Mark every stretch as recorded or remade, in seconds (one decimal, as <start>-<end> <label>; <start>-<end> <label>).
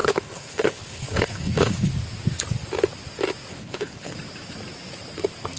0.0-1.9 remade; 1.9-3.5 recorded; 3.5-4.1 remade; 4.1-5.6 recorded